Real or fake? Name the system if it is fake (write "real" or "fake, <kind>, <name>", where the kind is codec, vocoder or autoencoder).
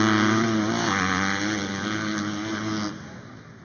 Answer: real